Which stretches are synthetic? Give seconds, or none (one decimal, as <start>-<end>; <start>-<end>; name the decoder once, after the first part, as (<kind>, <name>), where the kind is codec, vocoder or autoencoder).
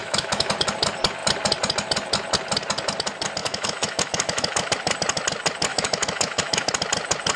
0.0-0.5 (autoencoder, DAC-VAE); 3.4-4.7; 5.7-6.7